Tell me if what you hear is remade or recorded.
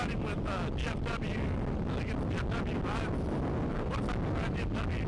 recorded